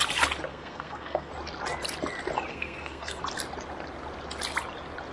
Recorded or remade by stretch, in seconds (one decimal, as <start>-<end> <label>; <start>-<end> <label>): 0.0-0.5 recorded; 0.5-1.3 remade; 1.3-2.5 recorded; 2.5-3.2 remade; 3.2-5.1 recorded